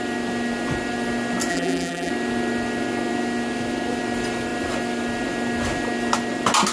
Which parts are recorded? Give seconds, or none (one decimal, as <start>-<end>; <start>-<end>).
0.0-1.5; 2.1-6.7